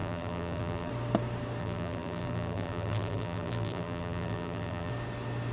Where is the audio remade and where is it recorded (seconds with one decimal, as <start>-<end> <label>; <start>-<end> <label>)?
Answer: 0.0-0.9 remade; 0.9-1.6 recorded; 1.6-4.9 remade; 4.9-5.5 recorded